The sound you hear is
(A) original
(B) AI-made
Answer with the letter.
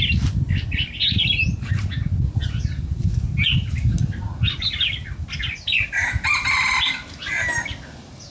A